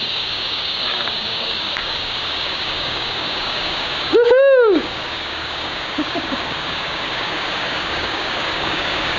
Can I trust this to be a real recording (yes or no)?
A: no